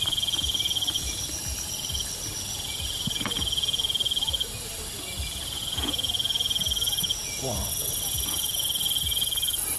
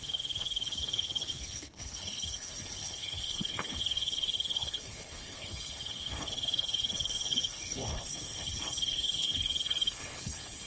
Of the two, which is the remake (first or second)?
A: second